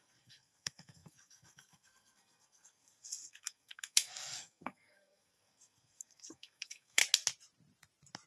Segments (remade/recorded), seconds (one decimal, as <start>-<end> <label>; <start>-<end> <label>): 0.0-7.0 remade; 7.0-8.3 recorded